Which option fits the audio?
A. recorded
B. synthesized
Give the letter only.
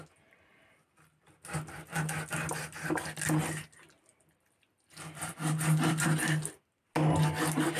A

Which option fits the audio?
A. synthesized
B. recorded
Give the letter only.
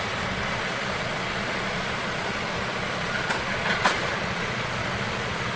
A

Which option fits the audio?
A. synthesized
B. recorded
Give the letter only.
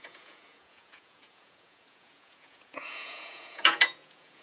A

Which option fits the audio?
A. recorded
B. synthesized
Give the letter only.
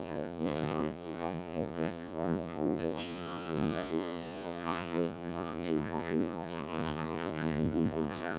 B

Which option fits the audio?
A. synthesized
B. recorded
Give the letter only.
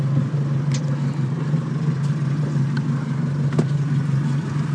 B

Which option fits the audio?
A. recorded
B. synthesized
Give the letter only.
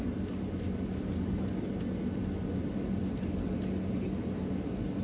A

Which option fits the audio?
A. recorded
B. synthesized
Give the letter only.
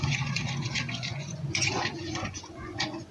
B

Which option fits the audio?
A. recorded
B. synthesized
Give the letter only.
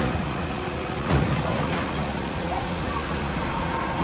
B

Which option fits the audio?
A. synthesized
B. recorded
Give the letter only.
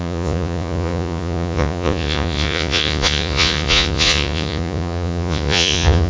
A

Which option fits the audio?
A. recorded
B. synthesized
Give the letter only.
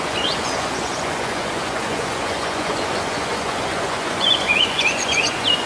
B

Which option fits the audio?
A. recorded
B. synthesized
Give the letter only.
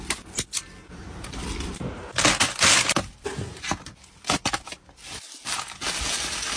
A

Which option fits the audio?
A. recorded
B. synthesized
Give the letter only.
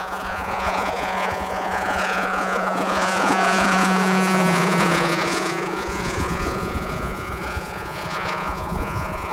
B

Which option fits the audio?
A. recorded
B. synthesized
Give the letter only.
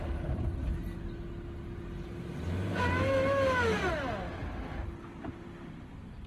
A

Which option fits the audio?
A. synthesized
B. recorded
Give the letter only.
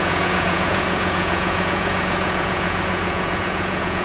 A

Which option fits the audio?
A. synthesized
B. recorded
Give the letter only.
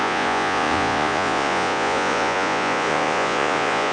A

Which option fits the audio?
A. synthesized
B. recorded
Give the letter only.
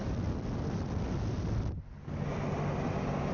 B